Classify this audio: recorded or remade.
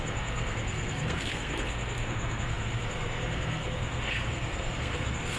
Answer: remade